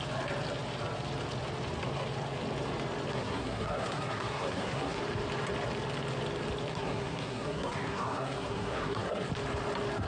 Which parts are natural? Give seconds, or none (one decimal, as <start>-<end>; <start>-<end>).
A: 0.0-3.1; 5.0-6.7; 9.3-10.1